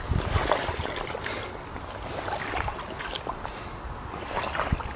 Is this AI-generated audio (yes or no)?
no